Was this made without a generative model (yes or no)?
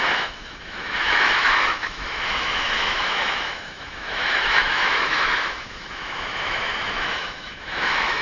no